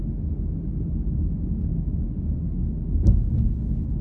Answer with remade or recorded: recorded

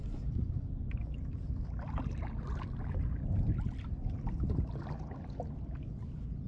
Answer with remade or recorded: recorded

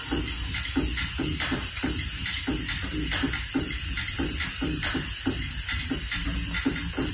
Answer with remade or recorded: recorded